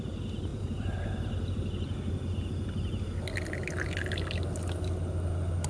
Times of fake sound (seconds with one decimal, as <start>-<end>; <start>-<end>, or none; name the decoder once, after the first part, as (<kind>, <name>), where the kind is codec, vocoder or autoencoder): none

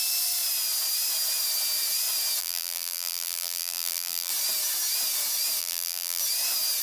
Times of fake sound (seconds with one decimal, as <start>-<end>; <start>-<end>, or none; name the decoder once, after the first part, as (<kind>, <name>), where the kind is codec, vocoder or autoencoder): 2.4-4.3 (vocoder, BigVGAN v2); 5.6-6.2

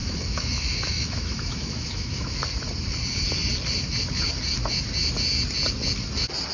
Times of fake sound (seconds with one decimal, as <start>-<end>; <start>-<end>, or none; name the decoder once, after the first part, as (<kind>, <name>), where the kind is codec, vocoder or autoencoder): 0.0-2.4 (autoencoder, DAC-VAE)

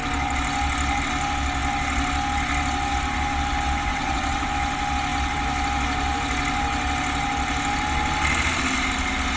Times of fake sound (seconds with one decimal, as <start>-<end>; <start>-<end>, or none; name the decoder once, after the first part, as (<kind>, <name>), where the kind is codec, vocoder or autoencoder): 3.9-4.5 (vocoder, WaveNeXt)

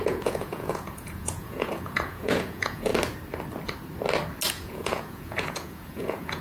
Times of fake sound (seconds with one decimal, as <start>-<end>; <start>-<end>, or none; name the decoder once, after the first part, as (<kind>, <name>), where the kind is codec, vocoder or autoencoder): 0.0-2.9 (vocoder, Vocos); 4.5-6.4